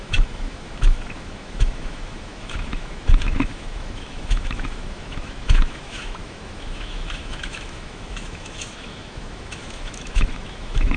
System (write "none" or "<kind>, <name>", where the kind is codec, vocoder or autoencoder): autoencoder, DAC-VAE